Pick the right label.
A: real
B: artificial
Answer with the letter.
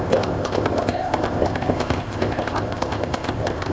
B